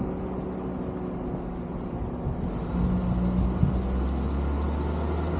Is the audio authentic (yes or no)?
yes